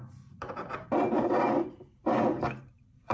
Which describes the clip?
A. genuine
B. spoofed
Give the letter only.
B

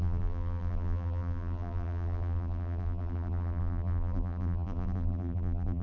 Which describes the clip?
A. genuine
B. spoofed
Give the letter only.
B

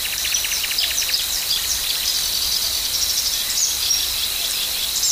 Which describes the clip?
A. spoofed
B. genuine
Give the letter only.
A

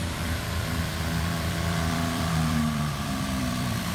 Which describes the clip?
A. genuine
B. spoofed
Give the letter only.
B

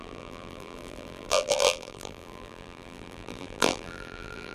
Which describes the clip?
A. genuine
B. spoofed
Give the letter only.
B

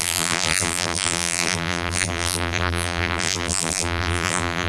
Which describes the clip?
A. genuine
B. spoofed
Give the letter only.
B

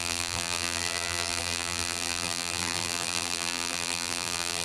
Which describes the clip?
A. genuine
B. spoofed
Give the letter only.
B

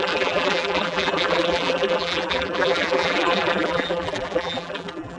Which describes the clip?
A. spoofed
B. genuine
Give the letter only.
A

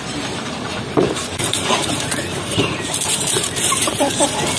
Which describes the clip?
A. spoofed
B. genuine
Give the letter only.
A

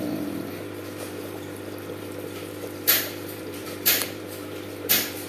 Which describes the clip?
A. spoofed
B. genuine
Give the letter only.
A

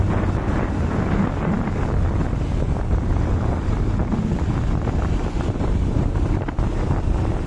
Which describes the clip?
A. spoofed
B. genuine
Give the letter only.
B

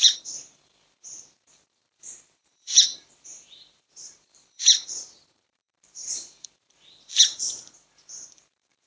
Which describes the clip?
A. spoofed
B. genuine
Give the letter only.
A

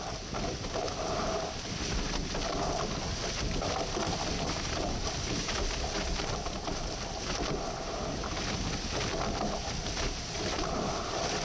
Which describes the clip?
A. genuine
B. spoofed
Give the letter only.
A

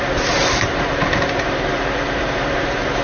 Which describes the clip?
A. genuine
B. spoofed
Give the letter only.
B